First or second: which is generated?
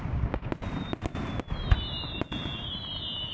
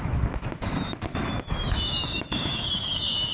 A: second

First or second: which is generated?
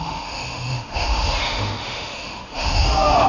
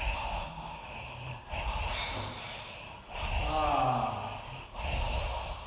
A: first